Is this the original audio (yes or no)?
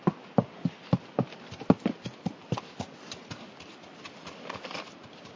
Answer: yes